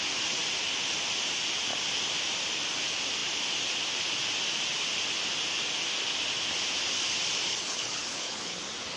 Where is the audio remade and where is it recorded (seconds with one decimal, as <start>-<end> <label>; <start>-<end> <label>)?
0.0-7.5 recorded; 7.5-8.6 remade; 8.6-9.0 recorded